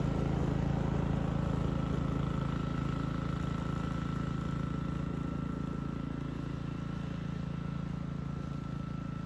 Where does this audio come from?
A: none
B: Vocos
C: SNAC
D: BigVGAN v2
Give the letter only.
A